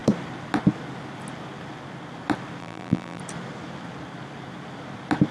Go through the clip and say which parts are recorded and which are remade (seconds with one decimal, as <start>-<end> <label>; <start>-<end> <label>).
0.0-2.6 recorded; 2.6-3.2 remade; 3.2-5.3 recorded